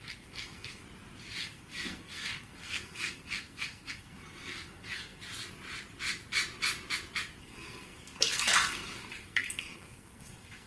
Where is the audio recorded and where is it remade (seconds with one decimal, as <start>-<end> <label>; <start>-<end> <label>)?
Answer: 0.0-0.8 remade; 0.8-1.4 recorded; 1.4-5.2 remade; 5.2-7.4 recorded; 7.4-10.7 remade

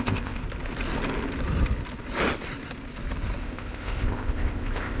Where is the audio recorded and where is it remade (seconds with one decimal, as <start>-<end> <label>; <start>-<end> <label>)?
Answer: 0.0-0.4 remade; 0.4-3.4 recorded; 3.4-5.0 remade

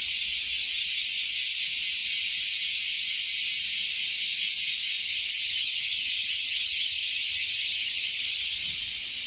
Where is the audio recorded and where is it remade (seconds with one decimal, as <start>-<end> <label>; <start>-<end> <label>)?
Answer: 0.0-5.0 recorded; 5.0-8.8 remade; 8.8-9.3 recorded

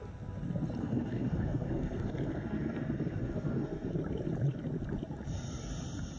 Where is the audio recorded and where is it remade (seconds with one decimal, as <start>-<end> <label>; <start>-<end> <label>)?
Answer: 0.0-0.8 recorded; 0.8-3.9 remade; 3.9-6.2 recorded

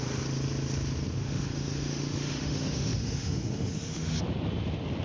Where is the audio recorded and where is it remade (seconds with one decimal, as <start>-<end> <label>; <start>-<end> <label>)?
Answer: 0.0-1.2 recorded; 1.2-4.2 remade; 4.2-5.0 recorded

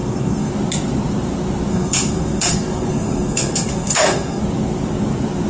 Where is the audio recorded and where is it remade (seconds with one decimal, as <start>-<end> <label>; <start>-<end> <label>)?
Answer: 0.0-0.5 remade; 0.5-1.7 recorded; 1.7-4.4 remade; 4.4-5.5 recorded